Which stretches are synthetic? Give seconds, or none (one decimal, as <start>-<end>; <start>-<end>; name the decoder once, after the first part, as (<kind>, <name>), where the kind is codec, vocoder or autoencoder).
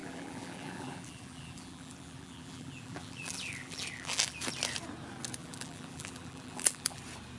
0.0-4.4 (vocoder, BigVGAN v2); 5.4-7.0